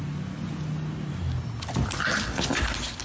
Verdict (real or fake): real